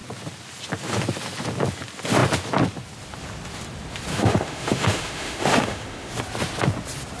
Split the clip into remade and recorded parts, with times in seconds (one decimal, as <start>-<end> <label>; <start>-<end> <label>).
0.0-4.1 recorded; 4.1-6.1 remade; 6.1-7.2 recorded